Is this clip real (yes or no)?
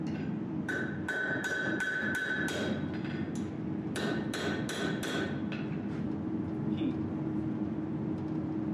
yes